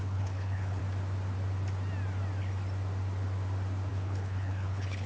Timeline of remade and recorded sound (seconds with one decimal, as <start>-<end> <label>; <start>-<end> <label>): 0.0-0.8 remade; 0.8-3.9 recorded; 3.9-5.1 remade